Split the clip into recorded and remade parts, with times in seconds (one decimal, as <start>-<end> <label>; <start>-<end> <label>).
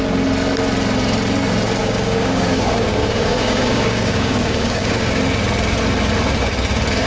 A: 0.0-1.8 recorded; 1.8-5.2 remade; 5.2-7.1 recorded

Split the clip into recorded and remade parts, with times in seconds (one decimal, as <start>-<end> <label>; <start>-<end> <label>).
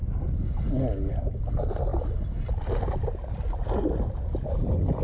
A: 0.0-5.0 recorded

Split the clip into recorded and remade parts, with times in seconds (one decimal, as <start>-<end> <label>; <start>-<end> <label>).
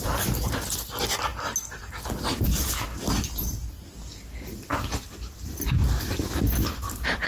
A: 0.0-7.3 recorded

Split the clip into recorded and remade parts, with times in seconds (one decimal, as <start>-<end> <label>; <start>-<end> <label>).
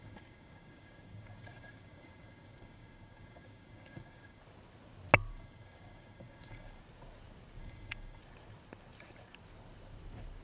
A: 0.0-4.4 remade; 4.4-5.3 recorded; 5.3-6.8 remade; 6.8-7.6 recorded; 7.6-8.2 remade; 8.2-10.4 recorded